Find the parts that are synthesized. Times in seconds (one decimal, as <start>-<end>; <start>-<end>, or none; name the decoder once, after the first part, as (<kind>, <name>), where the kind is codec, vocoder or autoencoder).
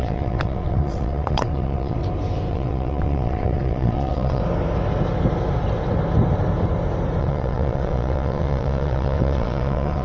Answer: 0.0-2.0 (vocoder, WaveNeXt); 2.5-4.4; 7.2-10.0